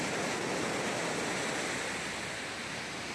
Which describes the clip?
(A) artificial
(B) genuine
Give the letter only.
B